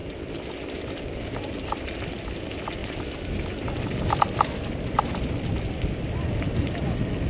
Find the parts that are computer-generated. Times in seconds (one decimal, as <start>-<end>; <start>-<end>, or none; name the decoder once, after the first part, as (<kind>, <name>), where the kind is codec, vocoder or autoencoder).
0.0-1.8 (vocoder, BigVGAN v2); 2.8-7.3